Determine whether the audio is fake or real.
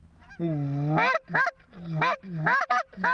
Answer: real